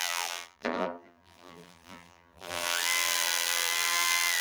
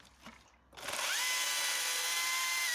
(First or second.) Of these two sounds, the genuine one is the second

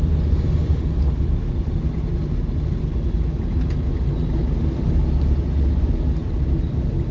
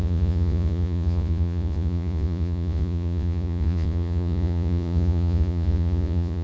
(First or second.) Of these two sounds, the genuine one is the first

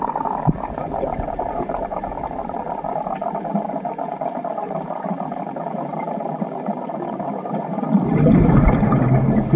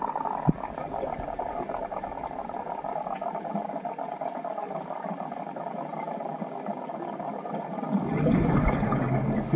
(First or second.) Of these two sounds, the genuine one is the second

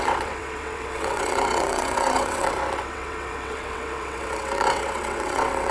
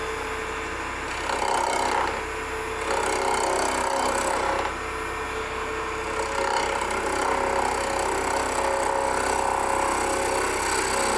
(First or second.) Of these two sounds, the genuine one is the second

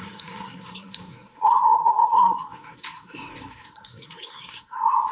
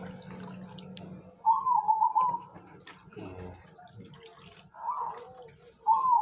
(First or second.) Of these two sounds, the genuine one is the second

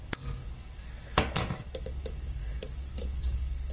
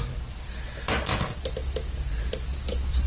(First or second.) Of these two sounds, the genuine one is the second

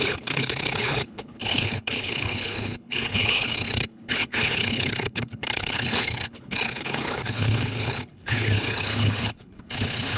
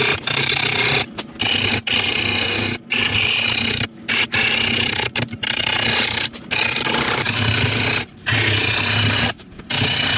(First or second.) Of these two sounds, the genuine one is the second